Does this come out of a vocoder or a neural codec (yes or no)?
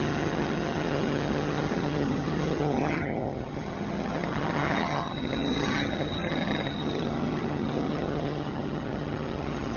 yes